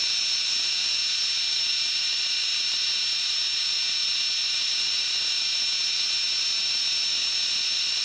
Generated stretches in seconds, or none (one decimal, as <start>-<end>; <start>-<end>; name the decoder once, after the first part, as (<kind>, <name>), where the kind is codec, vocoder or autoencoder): none

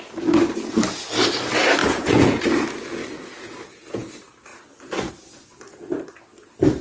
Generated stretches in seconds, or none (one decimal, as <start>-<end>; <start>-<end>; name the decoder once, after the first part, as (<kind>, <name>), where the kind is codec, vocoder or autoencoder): 1.8-2.4 (vocoder, Vocos); 3.0-4.1

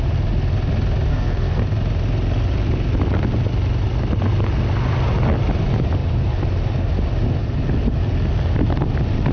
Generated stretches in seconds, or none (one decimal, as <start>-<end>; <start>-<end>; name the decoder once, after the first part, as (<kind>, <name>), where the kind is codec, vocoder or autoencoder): 1.1-1.6 (codec, SNAC)

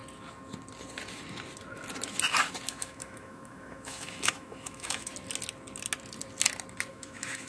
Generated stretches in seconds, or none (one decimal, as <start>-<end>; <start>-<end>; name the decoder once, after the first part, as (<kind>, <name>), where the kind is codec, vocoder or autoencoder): 2.7-5.1 (autoencoder, DAC-VAE); 6.9-7.5

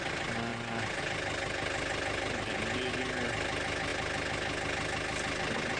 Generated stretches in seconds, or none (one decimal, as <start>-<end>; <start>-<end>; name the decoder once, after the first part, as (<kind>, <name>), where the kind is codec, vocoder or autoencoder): none